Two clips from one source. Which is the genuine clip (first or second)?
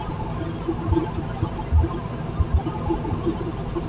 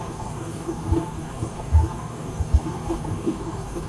first